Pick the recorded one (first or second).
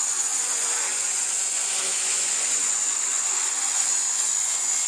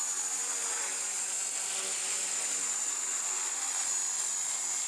second